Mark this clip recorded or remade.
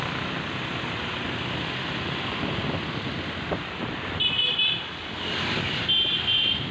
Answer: recorded